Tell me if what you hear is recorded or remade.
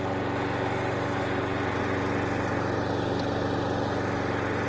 recorded